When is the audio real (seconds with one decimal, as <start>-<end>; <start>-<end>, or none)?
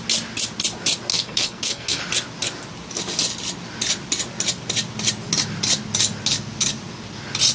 0.0-1.1; 2.0-7.5